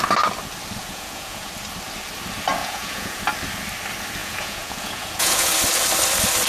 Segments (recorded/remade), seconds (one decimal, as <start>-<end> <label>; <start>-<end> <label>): 0.0-0.8 recorded; 0.8-1.5 remade; 1.5-2.6 recorded; 2.6-3.2 remade; 3.2-4.2 recorded; 4.2-5.5 remade; 5.5-6.5 recorded